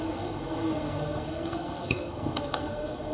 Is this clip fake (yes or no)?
yes